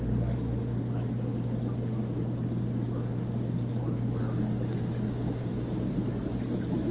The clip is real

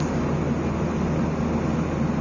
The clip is real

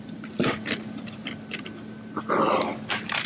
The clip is real